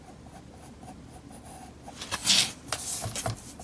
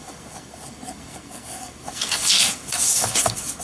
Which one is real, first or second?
first